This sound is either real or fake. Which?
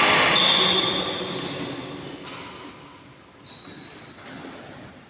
real